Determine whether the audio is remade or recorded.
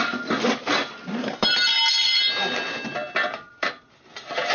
recorded